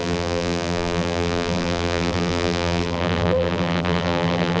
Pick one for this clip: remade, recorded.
remade